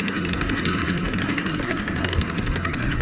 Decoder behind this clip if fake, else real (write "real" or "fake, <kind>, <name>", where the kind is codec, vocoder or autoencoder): fake, codec, SNAC